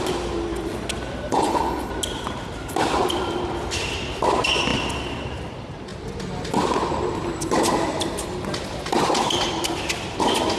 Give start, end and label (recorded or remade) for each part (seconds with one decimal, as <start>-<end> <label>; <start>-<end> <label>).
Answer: 0.0-1.3 recorded; 1.3-1.9 remade; 1.9-10.6 recorded